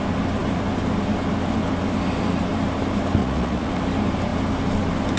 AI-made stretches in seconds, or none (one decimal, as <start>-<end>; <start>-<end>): 3.2-3.7